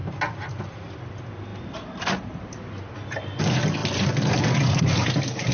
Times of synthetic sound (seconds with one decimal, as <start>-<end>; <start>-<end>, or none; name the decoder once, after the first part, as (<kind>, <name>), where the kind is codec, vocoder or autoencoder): 0.0-0.6 (vocoder, BigVGAN v2); 1.5-3.4; 3.8-5.1